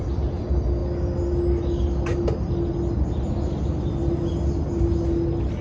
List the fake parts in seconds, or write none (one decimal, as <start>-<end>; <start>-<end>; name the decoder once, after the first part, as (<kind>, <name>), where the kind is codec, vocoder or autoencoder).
none